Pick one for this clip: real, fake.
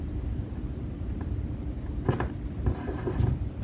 real